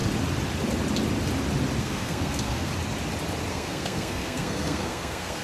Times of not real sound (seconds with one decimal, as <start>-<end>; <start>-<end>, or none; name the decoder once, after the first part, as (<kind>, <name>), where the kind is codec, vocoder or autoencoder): 1.8-2.7 (codec, SNAC); 3.5-5.4